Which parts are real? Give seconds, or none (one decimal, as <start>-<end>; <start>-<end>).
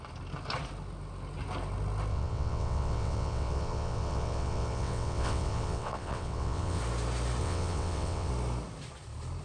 0.0-2.1; 6.8-7.4; 8.3-9.4